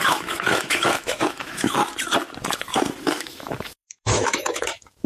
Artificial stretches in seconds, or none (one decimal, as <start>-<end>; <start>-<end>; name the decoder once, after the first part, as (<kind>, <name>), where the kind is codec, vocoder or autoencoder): 0.0-1.8 (autoencoder, DAC-VAE); 3.0-5.1